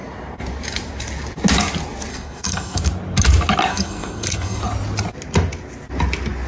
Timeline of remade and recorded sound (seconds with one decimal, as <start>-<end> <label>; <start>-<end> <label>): 0.0-2.1 recorded; 2.1-2.8 remade; 2.8-3.7 recorded; 3.7-4.6 remade; 4.6-6.5 recorded